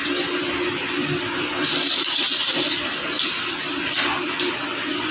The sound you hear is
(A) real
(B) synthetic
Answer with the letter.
A